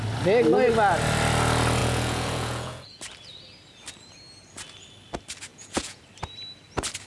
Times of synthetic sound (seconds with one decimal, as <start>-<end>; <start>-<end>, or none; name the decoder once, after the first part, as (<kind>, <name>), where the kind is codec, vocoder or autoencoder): 1.8-3.0 (vocoder, Vocos); 5.5-6.0

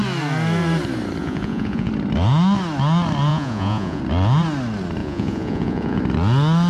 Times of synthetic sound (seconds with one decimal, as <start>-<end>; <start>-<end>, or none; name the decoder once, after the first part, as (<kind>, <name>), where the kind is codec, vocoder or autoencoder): 1.2-1.9 (vocoder, Vocos); 3.3-4.0; 5.0-6.0